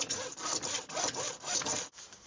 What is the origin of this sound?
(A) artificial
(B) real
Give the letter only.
B